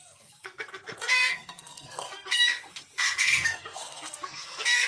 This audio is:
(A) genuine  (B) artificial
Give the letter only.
B